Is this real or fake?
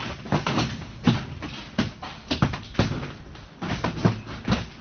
real